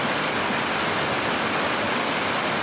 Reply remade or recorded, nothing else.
recorded